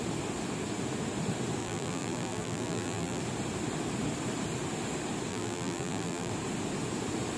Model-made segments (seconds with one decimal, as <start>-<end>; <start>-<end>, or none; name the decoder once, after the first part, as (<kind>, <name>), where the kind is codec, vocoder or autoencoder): 1.6-3.2 (vocoder, BigVGAN v2); 5.3-6.3